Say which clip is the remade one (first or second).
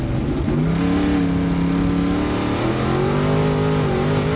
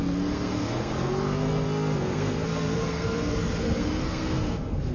second